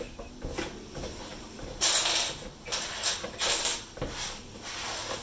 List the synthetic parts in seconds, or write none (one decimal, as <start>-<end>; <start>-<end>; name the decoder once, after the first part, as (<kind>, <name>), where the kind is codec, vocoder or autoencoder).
none